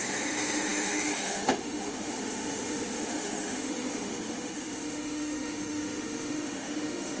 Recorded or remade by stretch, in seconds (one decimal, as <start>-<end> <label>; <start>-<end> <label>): 0.0-7.2 remade